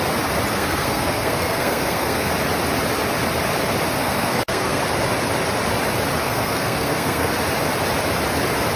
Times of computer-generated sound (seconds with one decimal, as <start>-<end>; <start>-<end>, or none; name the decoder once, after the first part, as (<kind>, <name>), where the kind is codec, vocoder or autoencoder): 0.5-2.3 (codec, SNAC); 4.0-4.8; 6.2-7.3